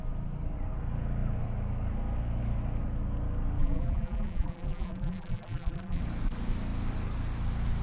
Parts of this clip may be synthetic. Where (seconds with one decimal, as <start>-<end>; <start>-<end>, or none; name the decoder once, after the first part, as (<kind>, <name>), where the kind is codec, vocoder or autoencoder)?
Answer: 3.6-6.0 (vocoder, BigVGAN v2)